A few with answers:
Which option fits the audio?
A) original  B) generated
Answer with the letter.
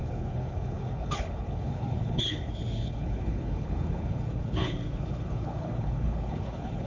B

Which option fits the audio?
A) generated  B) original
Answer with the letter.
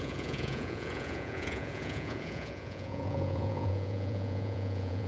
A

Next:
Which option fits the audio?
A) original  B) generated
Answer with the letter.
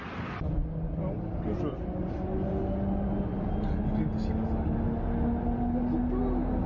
A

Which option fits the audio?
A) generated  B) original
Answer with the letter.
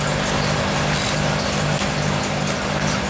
B